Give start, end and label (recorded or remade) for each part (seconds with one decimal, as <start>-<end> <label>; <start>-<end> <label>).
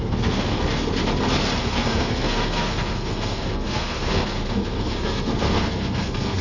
0.0-0.9 remade; 0.9-1.6 recorded; 1.6-6.4 remade